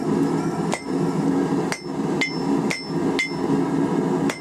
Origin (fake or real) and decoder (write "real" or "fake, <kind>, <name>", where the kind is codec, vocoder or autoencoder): real